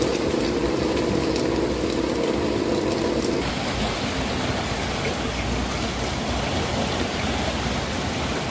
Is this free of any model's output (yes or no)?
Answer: yes